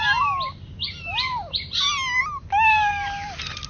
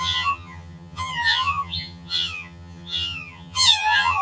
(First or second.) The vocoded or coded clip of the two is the second